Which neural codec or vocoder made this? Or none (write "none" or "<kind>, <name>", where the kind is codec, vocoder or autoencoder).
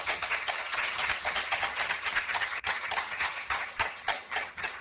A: vocoder, HiFi-GAN